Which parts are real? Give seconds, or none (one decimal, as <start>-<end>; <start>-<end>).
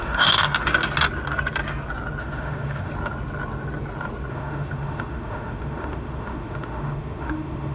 0.4-2.2; 2.9-4.3